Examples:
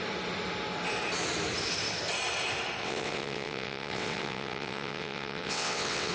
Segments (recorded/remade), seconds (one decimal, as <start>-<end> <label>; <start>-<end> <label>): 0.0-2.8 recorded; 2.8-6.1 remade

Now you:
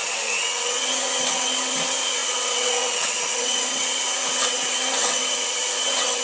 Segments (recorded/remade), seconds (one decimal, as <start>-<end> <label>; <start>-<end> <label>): 0.0-6.2 remade

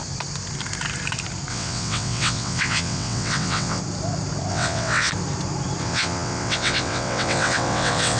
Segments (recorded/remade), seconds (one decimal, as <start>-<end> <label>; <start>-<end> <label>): 0.0-1.5 recorded; 1.5-3.8 remade; 3.8-4.5 recorded; 4.5-5.1 remade; 5.1-5.8 recorded; 5.8-8.2 remade

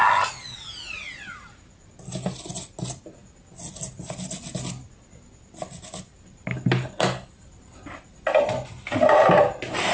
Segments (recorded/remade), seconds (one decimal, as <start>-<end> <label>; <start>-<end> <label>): 0.0-9.9 recorded